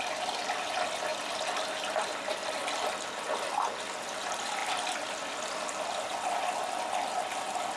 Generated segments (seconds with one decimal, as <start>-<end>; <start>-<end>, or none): none